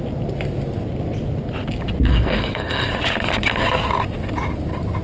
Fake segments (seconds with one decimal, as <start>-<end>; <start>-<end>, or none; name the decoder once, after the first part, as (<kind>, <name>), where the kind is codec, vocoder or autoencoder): 2.1-2.9 (codec, SNAC)